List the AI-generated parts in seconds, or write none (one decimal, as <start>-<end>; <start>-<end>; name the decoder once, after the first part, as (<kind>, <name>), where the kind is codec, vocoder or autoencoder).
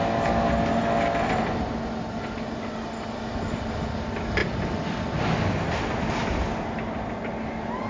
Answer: none